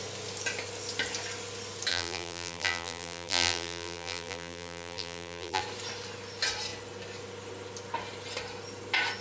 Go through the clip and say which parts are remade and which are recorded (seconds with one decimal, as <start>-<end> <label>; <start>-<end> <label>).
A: 0.0-1.9 recorded; 1.9-5.6 remade; 5.6-9.2 recorded